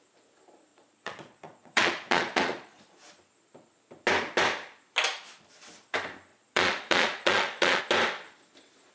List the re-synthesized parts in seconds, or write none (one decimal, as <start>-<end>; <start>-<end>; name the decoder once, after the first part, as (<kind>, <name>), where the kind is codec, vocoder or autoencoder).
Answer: 0.7-2.9 (vocoder, Vocos); 6.3-7.8